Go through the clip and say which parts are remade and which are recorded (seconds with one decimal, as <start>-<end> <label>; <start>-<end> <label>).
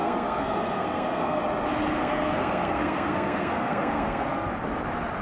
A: 0.0-1.4 remade; 1.4-2.0 recorded; 2.0-4.5 remade; 4.5-5.2 recorded